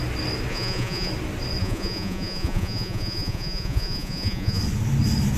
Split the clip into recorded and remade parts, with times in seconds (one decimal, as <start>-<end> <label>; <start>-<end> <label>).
0.0-0.5 recorded; 0.5-1.1 remade; 1.1-1.6 recorded; 1.6-4.6 remade; 4.6-5.4 recorded